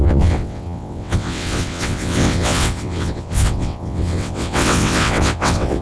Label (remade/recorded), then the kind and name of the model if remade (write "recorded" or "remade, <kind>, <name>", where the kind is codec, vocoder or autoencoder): remade, vocoder, WaveNeXt